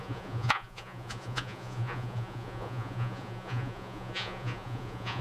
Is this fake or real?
fake